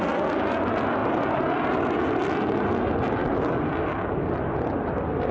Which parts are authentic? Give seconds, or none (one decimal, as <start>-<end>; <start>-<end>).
0.0-5.3